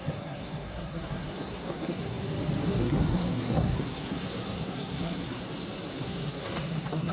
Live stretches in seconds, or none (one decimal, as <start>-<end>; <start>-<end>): 2.2-2.7; 5.4-6.0